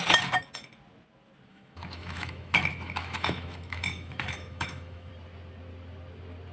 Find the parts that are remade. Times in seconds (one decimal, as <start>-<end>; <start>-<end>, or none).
1.5-5.1